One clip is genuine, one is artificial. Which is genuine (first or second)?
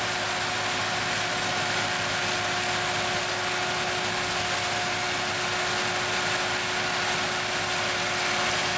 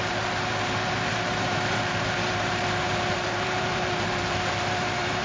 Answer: first